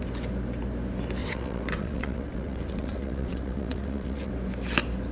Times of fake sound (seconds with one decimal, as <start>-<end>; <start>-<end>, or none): 1.2-4.3